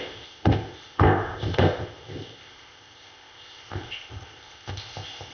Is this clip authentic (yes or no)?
no